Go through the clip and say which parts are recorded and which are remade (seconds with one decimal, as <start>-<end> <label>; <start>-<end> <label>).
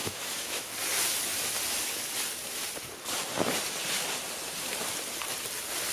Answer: 0.0-0.7 remade; 0.7-5.9 recorded